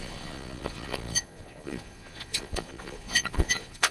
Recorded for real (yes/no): no